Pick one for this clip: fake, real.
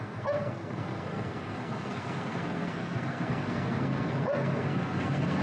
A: fake